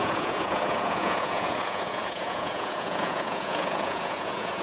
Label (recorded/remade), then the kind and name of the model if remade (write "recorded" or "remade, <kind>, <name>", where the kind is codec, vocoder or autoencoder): remade, vocoder, Vocos